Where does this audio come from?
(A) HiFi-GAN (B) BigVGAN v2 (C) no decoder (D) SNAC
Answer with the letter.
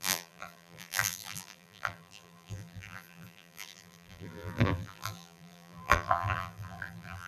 B